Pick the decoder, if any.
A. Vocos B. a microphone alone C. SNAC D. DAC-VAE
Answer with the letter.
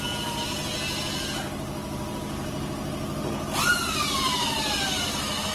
B